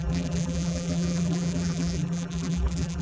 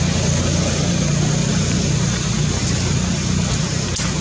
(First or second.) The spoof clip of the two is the first